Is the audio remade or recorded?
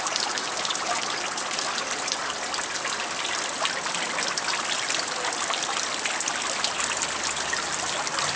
recorded